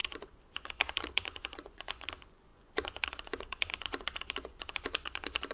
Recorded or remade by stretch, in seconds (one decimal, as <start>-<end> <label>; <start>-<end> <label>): 0.0-5.5 remade